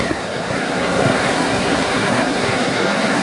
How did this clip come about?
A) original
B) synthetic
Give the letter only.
B